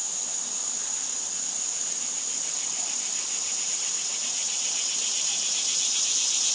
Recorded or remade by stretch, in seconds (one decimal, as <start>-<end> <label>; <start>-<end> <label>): 0.0-3.7 recorded; 3.7-5.3 remade; 5.3-6.5 recorded